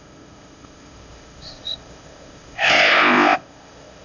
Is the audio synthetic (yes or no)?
yes